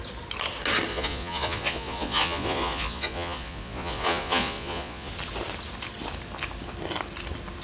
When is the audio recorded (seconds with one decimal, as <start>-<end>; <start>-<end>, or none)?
0.0-0.9; 5.1-7.6